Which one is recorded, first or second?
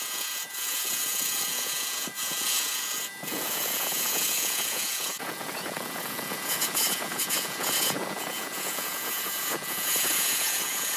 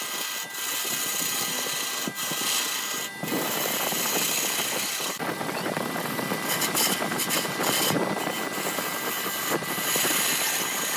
second